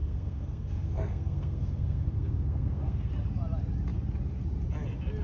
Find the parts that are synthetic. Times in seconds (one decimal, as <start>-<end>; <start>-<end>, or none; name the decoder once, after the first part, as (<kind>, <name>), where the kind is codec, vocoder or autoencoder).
0.0-3.1 (codec, SNAC)